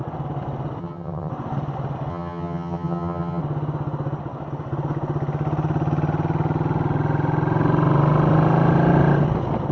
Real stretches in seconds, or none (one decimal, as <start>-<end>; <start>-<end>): 0.0-0.8; 1.3-2.1; 3.4-9.7